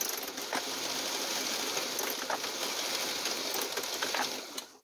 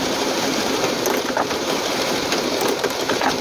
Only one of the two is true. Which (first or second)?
first